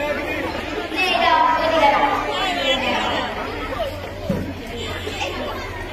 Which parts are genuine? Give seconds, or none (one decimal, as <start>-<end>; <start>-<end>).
0.0-2.6; 4.7-5.9